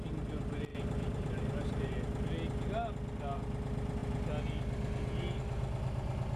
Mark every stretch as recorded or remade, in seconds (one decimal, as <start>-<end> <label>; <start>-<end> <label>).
0.0-0.7 recorded; 0.7-1.9 remade; 1.9-6.4 recorded